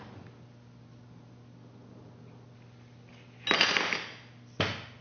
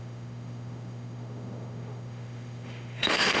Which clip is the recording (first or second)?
first